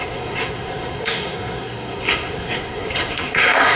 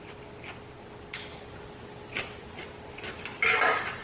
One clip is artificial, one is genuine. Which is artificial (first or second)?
first